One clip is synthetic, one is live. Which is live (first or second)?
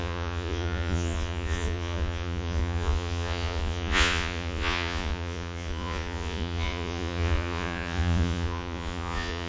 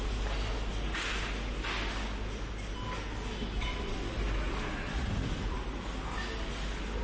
second